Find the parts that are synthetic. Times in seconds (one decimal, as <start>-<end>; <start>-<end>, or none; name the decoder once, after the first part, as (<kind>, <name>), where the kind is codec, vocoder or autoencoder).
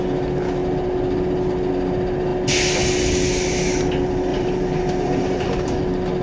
4.3-5.8 (vocoder, BigVGAN v2)